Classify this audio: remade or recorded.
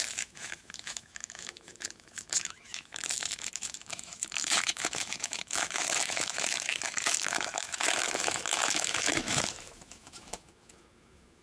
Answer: remade